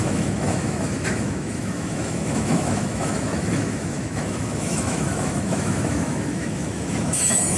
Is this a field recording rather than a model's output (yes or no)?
no